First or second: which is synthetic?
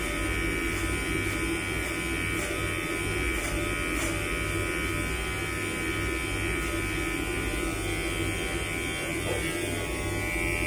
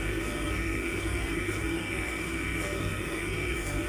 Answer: second